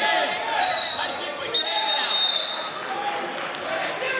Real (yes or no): yes